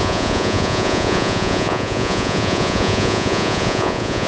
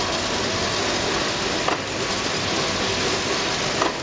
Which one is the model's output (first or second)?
first